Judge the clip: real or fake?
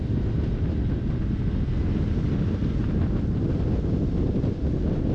real